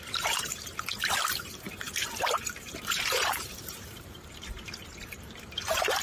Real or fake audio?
fake